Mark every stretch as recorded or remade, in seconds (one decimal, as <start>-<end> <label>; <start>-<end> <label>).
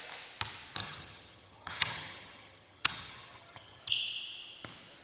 0.0-0.8 recorded; 0.8-3.8 remade; 3.8-5.0 recorded